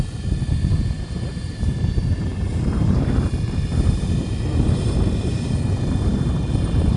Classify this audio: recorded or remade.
remade